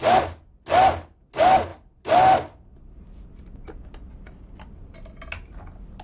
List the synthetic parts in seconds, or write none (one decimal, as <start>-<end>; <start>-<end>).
none